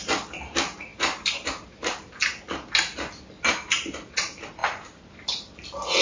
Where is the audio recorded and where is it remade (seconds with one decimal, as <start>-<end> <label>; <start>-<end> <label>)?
0.0-0.9 recorded; 0.9-2.1 remade; 2.1-6.0 recorded